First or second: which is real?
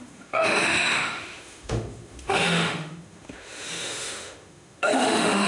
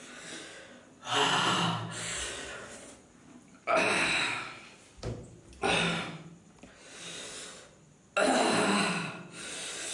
second